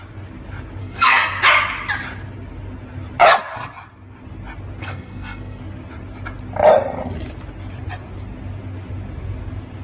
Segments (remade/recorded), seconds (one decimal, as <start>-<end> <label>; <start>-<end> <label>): 0.0-0.8 recorded; 0.8-1.4 remade; 1.4-4.8 recorded; 4.8-5.6 remade; 5.6-9.8 recorded